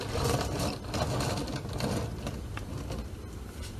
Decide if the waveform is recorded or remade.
recorded